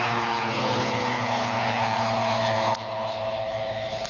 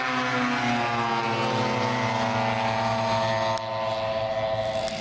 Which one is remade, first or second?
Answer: first